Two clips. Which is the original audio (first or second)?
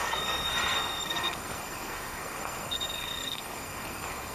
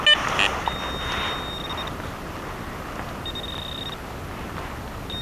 second